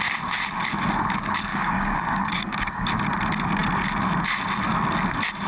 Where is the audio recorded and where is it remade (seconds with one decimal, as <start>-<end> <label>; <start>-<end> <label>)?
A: 0.0-1.5 recorded; 1.5-2.9 remade; 2.9-5.5 recorded